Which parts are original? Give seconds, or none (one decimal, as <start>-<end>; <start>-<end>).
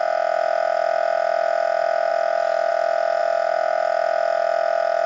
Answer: 0.0-2.1; 2.7-5.1